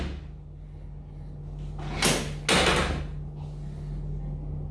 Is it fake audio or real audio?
real